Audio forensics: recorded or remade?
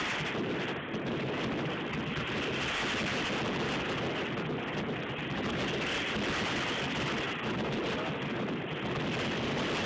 recorded